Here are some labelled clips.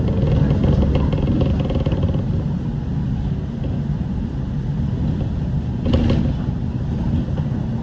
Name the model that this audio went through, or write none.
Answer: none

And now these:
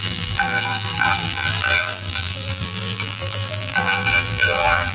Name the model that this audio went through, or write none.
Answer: vocoder, BigVGAN v2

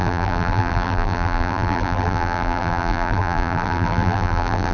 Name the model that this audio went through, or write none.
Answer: vocoder, BigVGAN v2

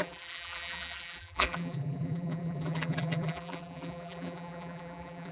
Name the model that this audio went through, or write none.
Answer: vocoder, BigVGAN v2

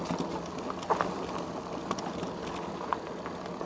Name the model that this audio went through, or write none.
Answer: none